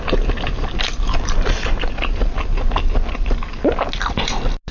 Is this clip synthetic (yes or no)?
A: no